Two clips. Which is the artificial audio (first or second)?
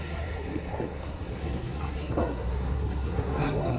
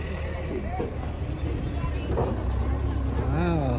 first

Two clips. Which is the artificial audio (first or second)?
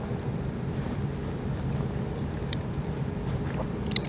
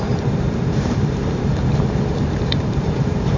second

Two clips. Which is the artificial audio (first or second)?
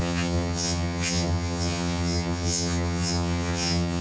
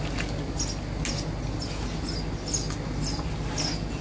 first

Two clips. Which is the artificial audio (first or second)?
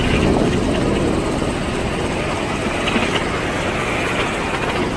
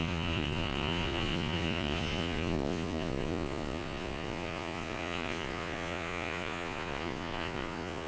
second